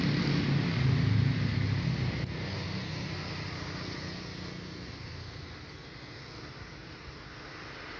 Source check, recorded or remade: recorded